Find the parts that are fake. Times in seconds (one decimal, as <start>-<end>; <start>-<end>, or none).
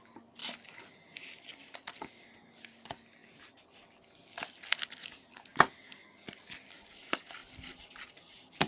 0.4-1.2; 3.2-4.0; 5.5-7.0; 7.4-8.7